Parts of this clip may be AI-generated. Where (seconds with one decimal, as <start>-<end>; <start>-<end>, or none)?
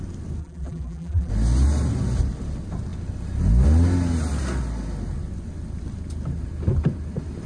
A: 0.4-1.3